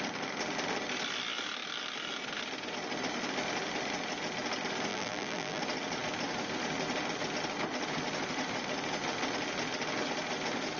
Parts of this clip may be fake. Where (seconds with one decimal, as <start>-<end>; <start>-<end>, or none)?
4.9-5.6